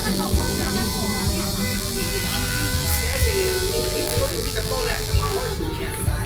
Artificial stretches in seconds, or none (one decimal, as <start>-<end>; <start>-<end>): 0.0-0.7; 1.7-5.5